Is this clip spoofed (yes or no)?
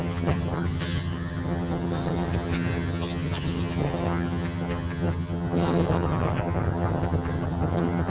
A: yes